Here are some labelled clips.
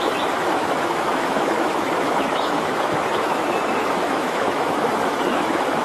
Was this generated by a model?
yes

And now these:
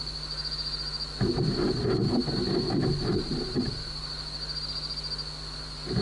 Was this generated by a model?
no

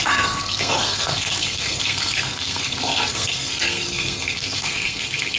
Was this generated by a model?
yes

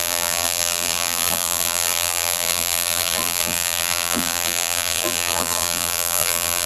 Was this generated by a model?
yes